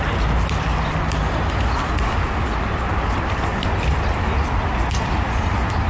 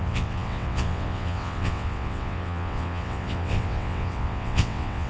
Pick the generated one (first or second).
second